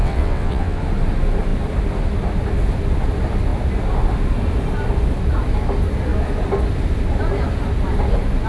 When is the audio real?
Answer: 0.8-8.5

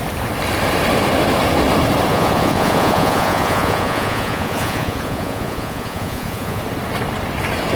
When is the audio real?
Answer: 0.0-2.1; 6.6-7.8

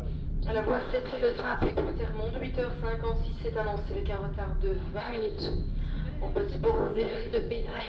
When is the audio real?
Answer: 0.0-0.7; 1.7-5.0; 5.6-6.8

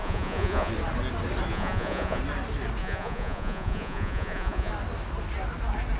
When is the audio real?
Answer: 0.7-1.5; 2.2-2.8; 4.7-6.0

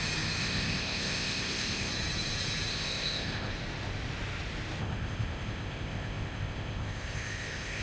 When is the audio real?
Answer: 0.0-0.4; 1.9-2.7; 3.5-4.8

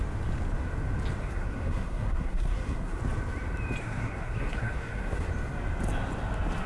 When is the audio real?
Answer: 0.0-1.2; 3.0-3.8; 5.3-6.7